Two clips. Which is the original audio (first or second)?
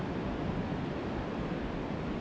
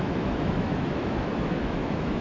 first